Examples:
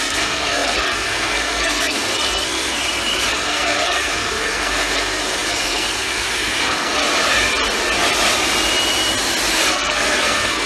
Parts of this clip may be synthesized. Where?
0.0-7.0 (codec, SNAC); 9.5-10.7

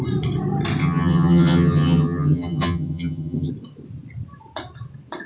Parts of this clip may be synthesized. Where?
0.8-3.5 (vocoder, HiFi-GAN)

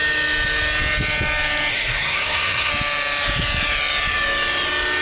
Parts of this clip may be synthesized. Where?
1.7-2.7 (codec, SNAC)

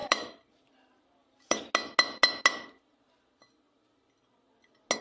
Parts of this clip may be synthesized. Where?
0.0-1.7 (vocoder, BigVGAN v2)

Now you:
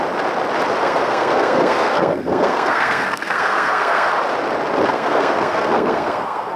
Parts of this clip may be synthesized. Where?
0.8-4.1 (codec, SNAC); 4.9-6.6

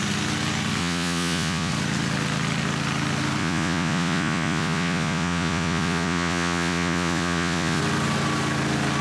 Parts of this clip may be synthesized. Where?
0.8-1.7 (vocoder, Vocos); 3.4-7.8

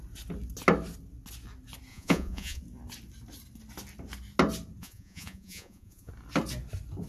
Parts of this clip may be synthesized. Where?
1.9-2.6 (vocoder, Vocos); 4.8-6.1